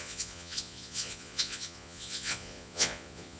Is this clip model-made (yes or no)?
yes